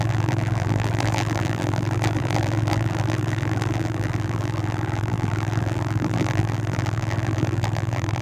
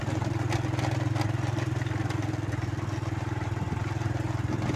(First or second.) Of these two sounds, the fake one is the first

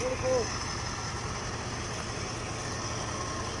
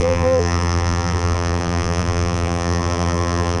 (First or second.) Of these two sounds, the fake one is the second